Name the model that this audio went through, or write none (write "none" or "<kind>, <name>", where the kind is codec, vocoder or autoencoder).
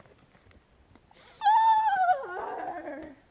none